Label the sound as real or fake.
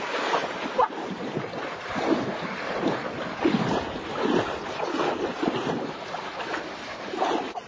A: real